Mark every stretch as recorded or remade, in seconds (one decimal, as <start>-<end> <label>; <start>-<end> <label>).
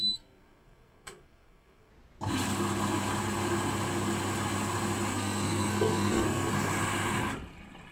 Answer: 0.0-1.9 remade; 1.9-5.1 recorded; 5.1-6.5 remade; 6.5-7.9 recorded